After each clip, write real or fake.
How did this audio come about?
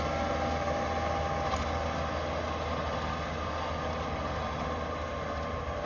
real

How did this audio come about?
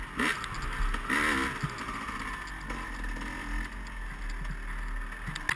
real